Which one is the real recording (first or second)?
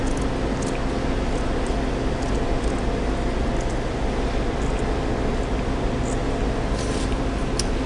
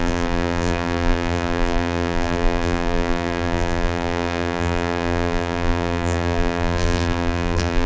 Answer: first